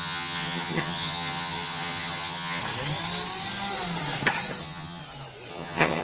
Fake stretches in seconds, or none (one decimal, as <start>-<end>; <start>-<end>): 0.0-2.6; 4.6-5.0; 5.5-6.0